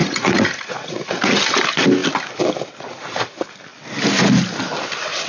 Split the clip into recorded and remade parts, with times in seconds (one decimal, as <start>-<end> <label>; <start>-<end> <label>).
0.0-1.4 remade; 1.4-5.3 recorded